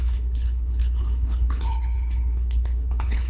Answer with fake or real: fake